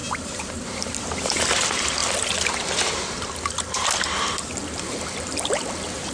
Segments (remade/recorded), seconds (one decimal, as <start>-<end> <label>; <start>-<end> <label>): 0.0-1.2 remade; 1.2-6.1 recorded